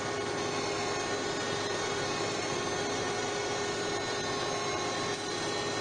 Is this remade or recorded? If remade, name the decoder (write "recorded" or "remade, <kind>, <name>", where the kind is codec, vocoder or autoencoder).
recorded